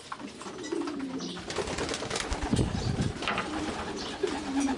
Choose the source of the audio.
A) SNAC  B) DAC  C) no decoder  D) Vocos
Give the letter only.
C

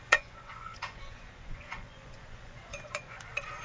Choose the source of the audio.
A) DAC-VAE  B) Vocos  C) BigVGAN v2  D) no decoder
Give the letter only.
B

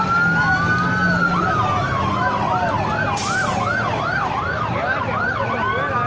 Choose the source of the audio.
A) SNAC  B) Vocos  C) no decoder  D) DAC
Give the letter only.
C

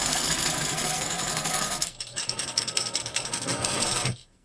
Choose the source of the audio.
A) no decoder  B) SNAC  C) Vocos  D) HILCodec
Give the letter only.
B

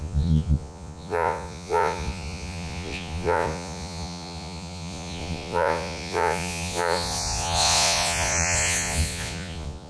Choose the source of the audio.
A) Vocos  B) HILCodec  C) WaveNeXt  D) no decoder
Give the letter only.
A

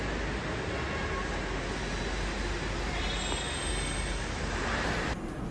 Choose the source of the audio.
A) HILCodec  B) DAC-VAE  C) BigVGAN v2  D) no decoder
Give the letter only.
D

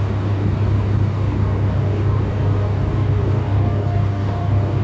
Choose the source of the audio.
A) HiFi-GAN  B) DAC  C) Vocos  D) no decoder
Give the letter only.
B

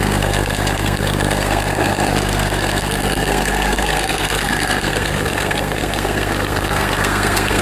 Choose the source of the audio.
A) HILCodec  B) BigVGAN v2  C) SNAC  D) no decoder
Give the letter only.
C